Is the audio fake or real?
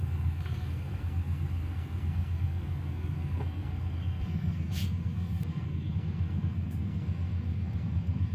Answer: fake